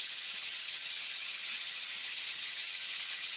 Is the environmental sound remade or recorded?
remade